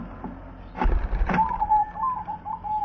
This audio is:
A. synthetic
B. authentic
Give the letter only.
B